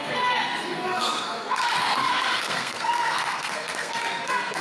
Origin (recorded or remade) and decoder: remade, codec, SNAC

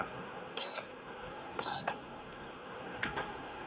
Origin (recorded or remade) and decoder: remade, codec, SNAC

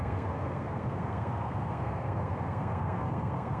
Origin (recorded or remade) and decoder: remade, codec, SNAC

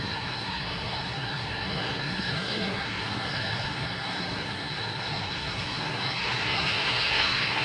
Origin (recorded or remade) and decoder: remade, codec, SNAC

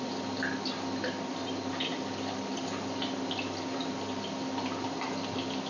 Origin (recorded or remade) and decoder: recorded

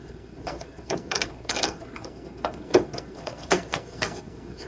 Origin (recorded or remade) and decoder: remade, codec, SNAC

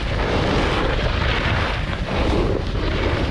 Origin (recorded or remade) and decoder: recorded